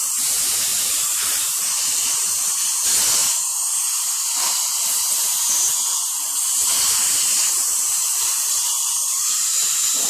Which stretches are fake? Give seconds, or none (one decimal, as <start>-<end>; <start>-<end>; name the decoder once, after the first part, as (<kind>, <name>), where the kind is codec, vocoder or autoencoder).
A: 0.0-3.2 (vocoder, BigVGAN v2); 5.9-10.1